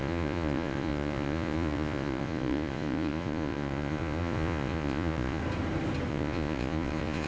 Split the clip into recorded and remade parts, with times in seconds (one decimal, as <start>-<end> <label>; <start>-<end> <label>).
0.0-5.4 remade; 5.4-6.1 recorded; 6.1-7.3 remade